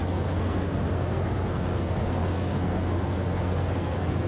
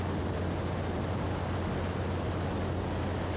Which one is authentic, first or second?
second